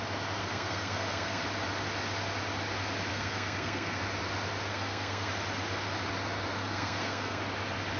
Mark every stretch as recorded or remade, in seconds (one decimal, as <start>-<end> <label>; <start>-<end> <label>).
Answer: 0.0-0.4 recorded; 0.4-1.4 remade; 1.4-3.1 recorded; 3.1-4.0 remade; 4.0-4.7 recorded; 4.7-5.3 remade; 5.3-6.6 recorded; 6.6-7.4 remade; 7.4-8.0 recorded